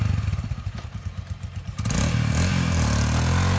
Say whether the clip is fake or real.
real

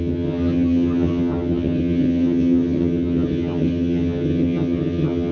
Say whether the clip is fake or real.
fake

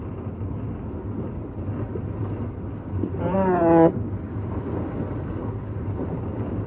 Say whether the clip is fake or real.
real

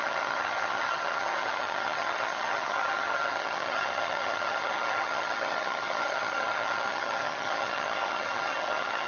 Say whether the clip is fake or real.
fake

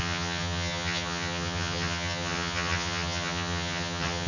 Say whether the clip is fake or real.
fake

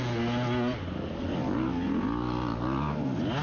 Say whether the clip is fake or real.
real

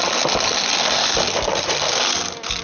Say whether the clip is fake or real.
real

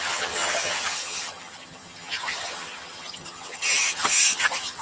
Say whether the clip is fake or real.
fake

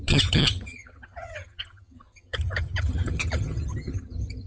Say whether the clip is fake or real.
fake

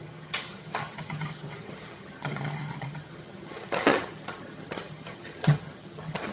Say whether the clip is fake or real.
fake